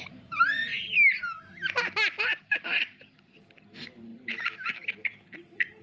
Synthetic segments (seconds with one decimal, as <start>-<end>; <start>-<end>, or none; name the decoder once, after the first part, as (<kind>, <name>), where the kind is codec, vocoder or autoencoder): 0.0-0.7 (vocoder, BigVGAN v2); 2.4-5.8

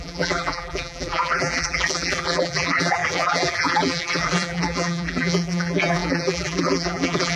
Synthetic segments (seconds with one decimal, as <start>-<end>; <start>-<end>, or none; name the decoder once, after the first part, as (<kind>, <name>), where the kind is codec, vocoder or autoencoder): 0.0-7.4 (vocoder, BigVGAN v2)

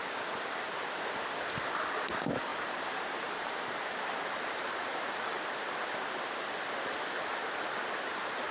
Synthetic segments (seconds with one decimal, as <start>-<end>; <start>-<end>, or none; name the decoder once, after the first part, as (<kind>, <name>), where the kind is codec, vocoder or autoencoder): 2.5-5.4 (vocoder, BigVGAN v2)

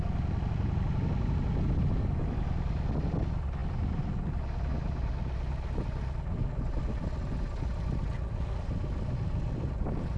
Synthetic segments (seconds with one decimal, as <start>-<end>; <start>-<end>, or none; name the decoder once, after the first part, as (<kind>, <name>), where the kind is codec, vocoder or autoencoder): none